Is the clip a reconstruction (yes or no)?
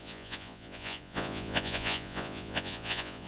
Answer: yes